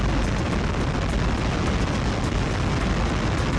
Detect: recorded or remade recorded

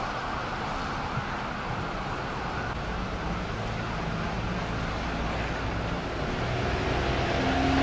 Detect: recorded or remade recorded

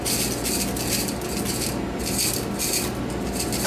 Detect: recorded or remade recorded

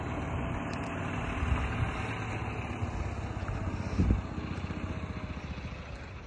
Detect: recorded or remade recorded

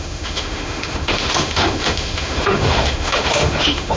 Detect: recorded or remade remade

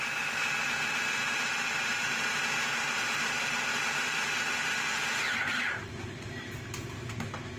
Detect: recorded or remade recorded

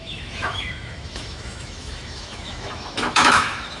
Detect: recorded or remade remade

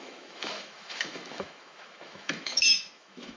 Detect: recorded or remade remade